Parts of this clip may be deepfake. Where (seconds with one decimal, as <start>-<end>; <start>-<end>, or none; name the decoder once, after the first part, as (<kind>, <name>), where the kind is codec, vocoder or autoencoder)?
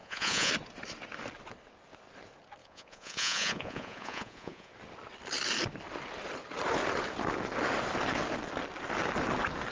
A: 0.0-0.5 (vocoder, Vocos); 2.6-4.7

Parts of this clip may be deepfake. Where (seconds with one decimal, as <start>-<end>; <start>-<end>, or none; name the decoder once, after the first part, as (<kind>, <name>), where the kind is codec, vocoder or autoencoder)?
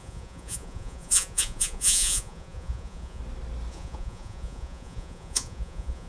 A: 0.0-3.2 (vocoder, Vocos); 3.7-6.1